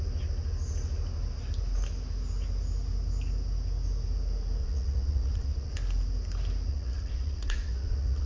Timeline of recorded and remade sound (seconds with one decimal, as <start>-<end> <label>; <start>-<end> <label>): 0.0-4.6 recorded; 4.6-5.7 remade; 5.7-6.7 recorded; 6.7-8.3 remade